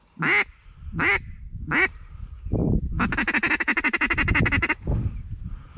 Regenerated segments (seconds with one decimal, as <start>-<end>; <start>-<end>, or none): none